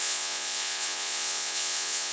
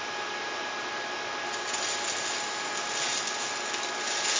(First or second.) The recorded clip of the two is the second